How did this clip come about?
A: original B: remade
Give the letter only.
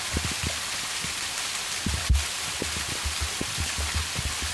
A